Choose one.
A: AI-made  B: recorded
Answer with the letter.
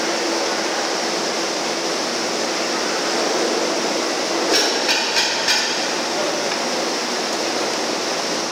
B